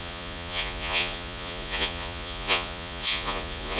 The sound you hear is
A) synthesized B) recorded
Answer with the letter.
A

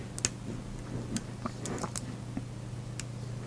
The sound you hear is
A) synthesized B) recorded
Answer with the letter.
B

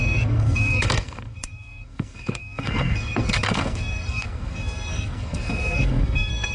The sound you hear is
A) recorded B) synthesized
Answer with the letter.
B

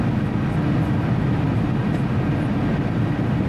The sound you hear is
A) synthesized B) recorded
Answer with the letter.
B